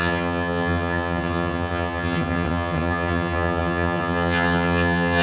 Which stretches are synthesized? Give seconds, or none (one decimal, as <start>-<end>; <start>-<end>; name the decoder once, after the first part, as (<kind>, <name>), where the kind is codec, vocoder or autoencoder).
0.0-5.2 (vocoder, HiFi-GAN)